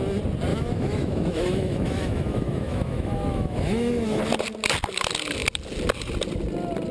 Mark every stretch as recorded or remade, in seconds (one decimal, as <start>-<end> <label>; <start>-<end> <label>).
0.0-0.5 recorded; 0.5-4.2 remade; 4.2-6.9 recorded